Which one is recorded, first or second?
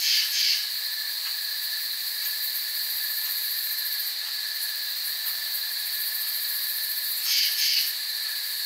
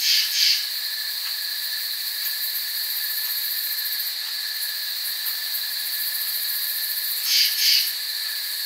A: second